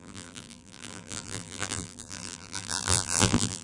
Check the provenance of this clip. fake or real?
fake